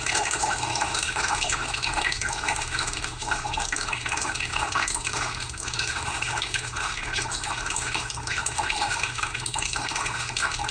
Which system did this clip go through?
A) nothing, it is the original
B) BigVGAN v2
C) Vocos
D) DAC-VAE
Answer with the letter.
D